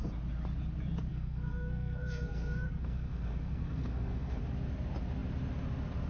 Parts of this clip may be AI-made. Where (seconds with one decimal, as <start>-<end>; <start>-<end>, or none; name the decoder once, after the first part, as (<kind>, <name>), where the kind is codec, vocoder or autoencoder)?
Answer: 1.1-4.4 (codec, SNAC)